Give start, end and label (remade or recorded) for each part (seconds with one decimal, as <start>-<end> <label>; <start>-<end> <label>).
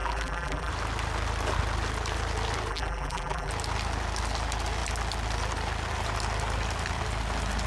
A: 0.0-0.7 remade; 0.7-2.7 recorded; 2.7-3.5 remade; 3.5-7.7 recorded